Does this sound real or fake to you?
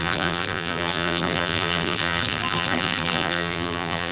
fake